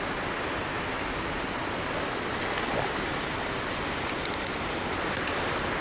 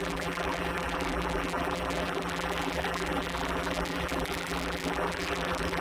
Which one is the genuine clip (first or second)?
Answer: first